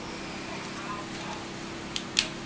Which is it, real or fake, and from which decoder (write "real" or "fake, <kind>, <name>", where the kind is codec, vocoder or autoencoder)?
real